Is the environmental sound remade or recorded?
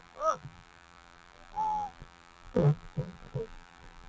remade